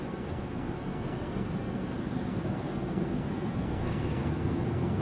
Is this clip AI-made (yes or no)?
yes